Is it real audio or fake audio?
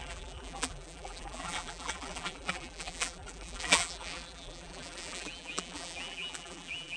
fake